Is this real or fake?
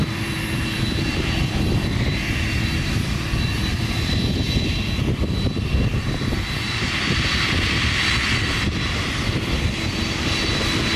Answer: fake